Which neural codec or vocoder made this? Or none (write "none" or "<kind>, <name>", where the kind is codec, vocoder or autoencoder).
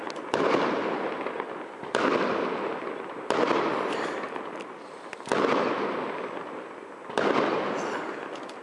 none